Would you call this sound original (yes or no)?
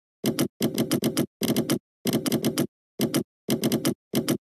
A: yes